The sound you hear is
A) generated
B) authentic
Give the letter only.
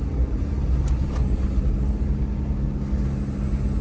B